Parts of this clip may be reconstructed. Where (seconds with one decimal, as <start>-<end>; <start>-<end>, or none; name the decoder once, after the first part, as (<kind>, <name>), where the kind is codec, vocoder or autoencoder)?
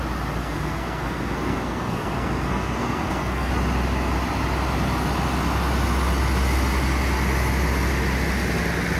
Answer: 0.4-3.5 (codec, SNAC)